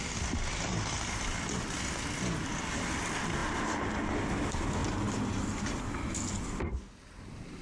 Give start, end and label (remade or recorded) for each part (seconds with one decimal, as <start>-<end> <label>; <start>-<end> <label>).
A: 0.0-7.6 recorded